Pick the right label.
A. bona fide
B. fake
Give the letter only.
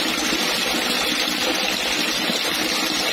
A